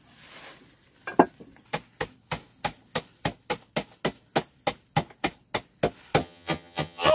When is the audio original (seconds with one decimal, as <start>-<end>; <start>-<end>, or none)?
0.0-6.2